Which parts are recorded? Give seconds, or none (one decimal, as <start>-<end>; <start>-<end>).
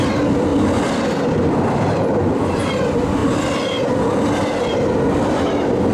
0.0-0.5; 2.8-5.9